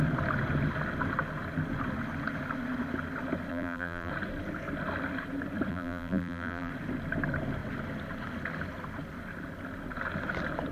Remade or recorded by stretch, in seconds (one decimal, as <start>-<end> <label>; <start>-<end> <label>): 0.0-3.5 recorded; 3.5-4.1 remade; 4.1-5.7 recorded; 5.7-6.7 remade; 6.7-10.7 recorded